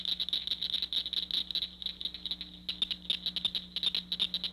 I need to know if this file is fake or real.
real